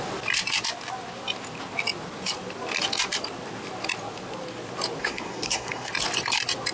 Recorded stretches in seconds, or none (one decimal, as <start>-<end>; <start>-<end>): 0.0-5.0; 5.9-6.7